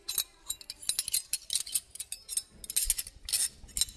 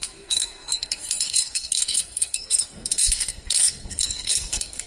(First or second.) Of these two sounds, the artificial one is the second